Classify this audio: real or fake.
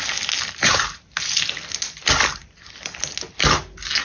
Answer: real